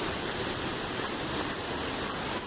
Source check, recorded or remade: remade